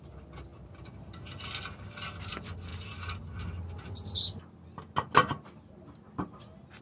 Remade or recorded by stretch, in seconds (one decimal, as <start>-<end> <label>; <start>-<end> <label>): 0.0-6.8 recorded